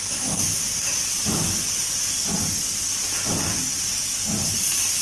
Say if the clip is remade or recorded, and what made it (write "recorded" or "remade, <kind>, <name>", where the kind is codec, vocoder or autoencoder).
recorded